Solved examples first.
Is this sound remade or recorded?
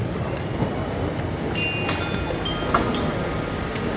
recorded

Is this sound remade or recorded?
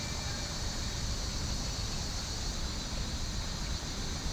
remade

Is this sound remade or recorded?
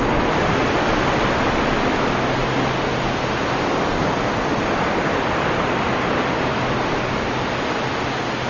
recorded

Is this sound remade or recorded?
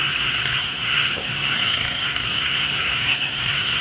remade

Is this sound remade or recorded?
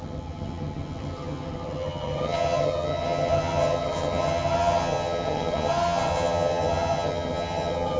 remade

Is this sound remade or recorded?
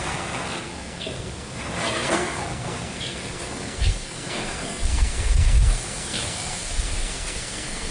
remade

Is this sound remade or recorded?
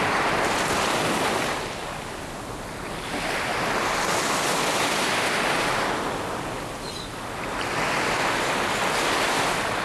recorded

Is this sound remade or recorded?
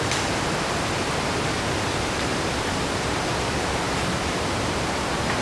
recorded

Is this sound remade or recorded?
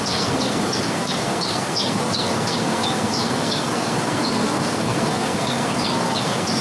remade